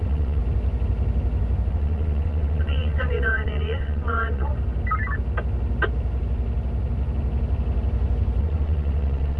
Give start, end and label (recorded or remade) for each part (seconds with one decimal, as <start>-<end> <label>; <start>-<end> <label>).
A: 0.0-0.4 remade; 0.4-1.7 recorded; 1.7-4.5 remade; 4.5-8.4 recorded; 8.4-9.4 remade